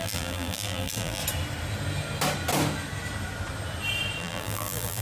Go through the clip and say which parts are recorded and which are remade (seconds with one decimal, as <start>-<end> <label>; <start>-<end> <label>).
0.0-1.2 remade; 1.2-4.2 recorded; 4.2-5.0 remade